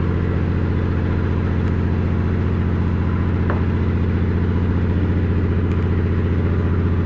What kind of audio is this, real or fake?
real